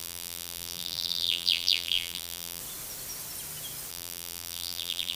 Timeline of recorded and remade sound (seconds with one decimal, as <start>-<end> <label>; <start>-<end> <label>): 0.0-2.6 remade; 2.6-3.9 recorded; 3.9-5.1 remade